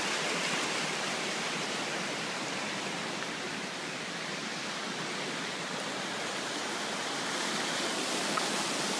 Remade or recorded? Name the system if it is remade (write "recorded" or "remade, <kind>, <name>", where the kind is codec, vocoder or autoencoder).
recorded